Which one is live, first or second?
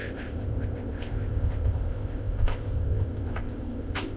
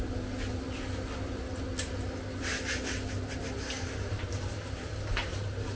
second